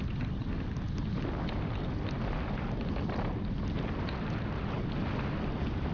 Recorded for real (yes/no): yes